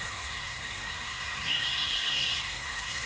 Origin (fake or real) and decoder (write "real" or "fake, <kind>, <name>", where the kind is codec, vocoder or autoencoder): fake, codec, SNAC